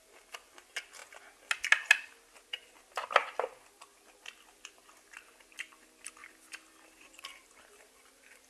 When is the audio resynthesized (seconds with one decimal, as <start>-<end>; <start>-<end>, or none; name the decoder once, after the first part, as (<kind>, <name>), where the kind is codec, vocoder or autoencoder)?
none